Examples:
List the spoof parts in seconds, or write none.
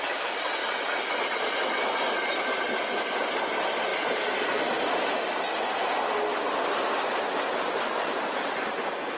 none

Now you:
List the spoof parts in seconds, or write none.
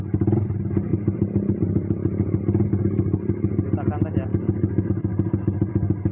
none